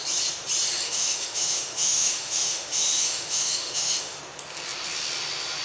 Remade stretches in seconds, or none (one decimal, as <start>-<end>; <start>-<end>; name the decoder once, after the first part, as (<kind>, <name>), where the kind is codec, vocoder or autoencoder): 0.8-4.2 (autoencoder, DAC-VAE)